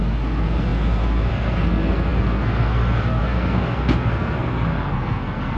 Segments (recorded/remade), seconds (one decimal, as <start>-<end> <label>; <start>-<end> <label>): 0.0-5.6 remade